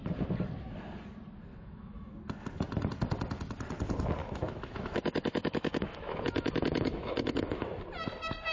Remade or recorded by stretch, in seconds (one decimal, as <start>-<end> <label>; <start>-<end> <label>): 0.0-1.5 recorded; 1.5-2.2 remade; 2.2-4.2 recorded; 4.2-7.8 remade; 7.8-8.5 recorded